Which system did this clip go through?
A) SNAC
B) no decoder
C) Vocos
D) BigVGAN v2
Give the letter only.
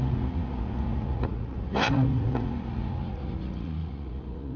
C